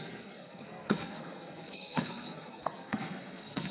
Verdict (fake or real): fake